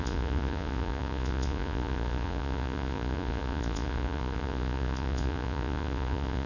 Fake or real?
fake